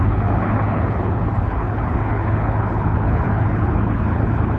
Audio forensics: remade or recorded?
remade